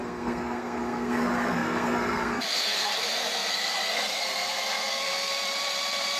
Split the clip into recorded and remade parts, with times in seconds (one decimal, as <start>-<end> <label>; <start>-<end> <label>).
0.0-5.3 remade; 5.3-6.2 recorded